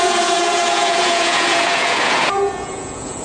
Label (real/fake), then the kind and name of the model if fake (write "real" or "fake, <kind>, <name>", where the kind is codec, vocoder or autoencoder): fake, vocoder, Vocos